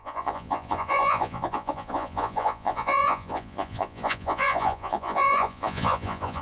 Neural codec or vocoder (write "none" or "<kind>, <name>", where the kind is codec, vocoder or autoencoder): vocoder, Vocos